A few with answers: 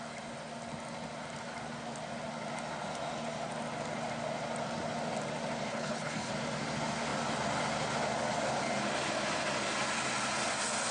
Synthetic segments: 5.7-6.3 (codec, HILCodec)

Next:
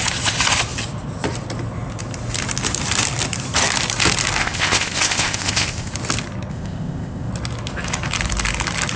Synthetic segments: 4.4-5.9 (codec, ZipCodec); 6.5-7.3

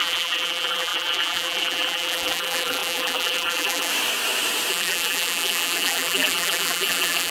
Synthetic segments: 0.0-3.9 (vocoder, BigVGAN v2); 4.7-7.3

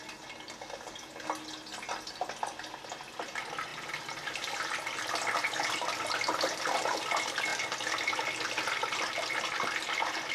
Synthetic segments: none

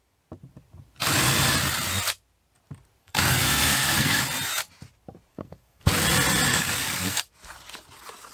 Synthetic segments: 3.0-4.2 (codec, SNAC); 5.3-5.9; 6.5-7.3

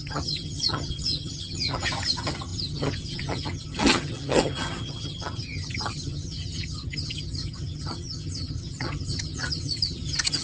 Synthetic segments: 0.0-10.4 (vocoder, HiFi-GAN)

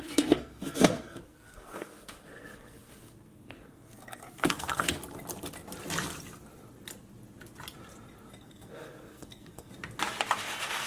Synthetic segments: 0.0-5.0 (codec, SNAC); 8.4-9.7; 10.4-10.9

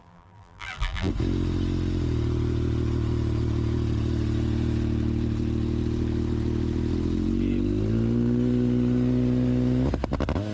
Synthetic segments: 0.0-1.1 (vocoder, BigVGAN v2)